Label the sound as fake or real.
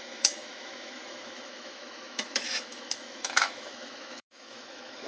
fake